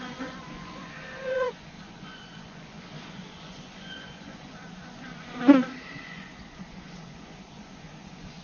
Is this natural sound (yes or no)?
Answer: no